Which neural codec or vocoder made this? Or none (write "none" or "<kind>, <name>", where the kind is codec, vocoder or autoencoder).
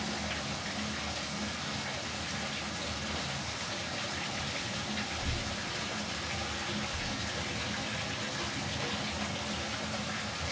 none